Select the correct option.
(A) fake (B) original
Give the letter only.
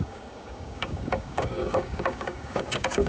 A